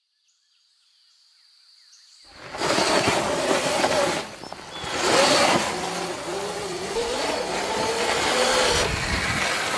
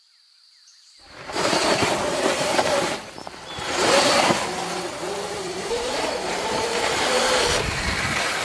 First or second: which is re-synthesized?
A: second